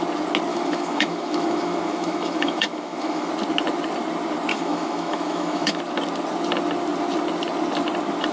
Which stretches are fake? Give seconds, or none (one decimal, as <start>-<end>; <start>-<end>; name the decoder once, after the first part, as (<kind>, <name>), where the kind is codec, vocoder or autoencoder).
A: 0.5-3.3 (autoencoder, DAC-VAE); 4.5-5.8